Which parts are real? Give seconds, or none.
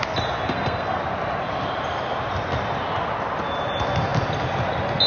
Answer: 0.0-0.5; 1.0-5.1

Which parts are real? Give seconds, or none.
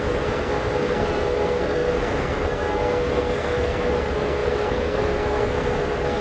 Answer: none